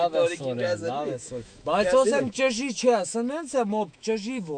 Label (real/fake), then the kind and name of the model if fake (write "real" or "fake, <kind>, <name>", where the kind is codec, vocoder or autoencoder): fake, autoencoder, DAC-VAE